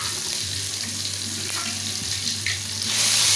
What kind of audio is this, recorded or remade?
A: recorded